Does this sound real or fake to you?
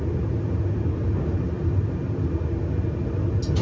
real